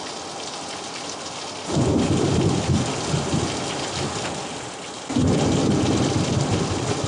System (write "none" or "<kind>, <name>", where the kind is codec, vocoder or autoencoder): none